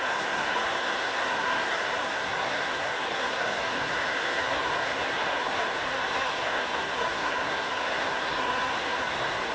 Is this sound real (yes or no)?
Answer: no